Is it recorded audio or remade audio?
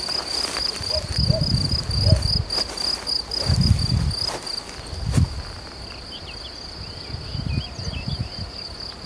recorded